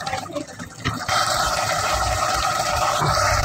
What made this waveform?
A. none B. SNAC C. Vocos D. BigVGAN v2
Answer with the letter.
A